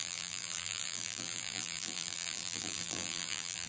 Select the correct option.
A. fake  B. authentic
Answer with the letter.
A